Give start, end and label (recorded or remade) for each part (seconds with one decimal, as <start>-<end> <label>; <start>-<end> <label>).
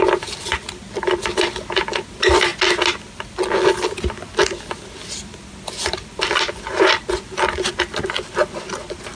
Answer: 0.0-9.1 recorded